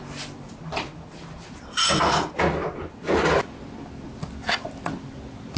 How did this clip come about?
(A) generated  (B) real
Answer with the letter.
B